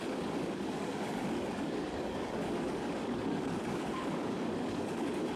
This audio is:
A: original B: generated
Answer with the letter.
B